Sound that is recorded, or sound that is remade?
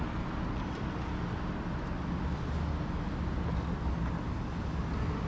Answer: recorded